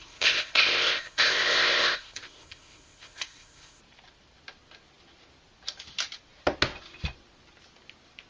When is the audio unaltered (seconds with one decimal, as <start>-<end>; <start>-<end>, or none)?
3.8-8.3